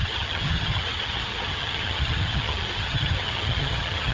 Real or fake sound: fake